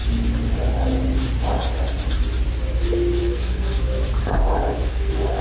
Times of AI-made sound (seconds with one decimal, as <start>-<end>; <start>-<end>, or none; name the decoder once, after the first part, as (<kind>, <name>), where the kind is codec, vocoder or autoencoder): 3.2-3.8 (codec, SNAC); 4.9-5.4